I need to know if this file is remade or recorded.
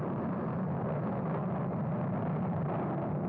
recorded